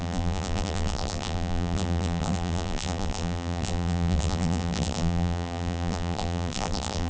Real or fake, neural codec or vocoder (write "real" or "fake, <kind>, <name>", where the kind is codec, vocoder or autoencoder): fake, vocoder, BigVGAN v2